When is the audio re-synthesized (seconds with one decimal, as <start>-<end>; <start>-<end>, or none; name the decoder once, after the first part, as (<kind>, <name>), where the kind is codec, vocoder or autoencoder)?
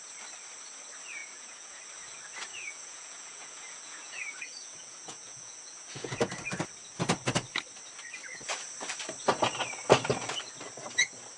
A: 1.2-1.8 (vocoder, Vocos); 2.5-6.3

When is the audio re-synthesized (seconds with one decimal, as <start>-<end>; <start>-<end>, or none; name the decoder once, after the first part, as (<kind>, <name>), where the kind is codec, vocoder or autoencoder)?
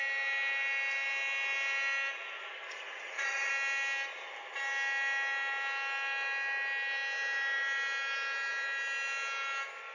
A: 2.7-3.5 (vocoder, Vocos)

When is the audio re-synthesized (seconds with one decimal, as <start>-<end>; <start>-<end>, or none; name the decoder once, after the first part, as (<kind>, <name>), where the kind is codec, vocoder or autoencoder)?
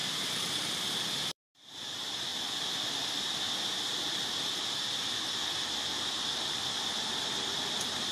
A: 0.0-2.3 (vocoder, BigVGAN v2); 3.9-5.4; 6.1-8.1